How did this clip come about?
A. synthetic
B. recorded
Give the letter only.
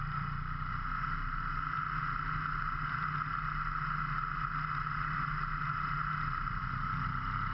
B